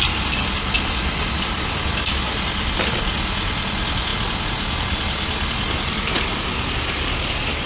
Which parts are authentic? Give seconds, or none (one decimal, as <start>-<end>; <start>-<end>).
0.0-7.7